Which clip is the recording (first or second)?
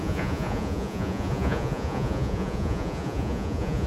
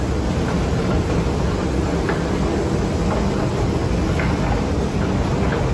second